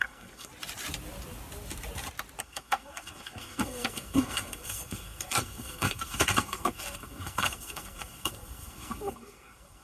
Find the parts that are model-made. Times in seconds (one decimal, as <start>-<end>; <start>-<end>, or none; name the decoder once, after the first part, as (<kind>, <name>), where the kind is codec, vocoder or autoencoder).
0.0-0.5 (codec, SNAC); 2.4-9.8